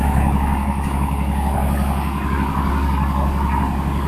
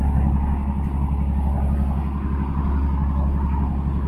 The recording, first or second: second